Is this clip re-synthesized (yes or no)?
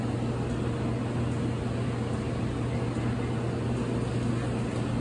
no